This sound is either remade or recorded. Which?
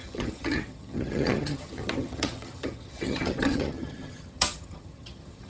remade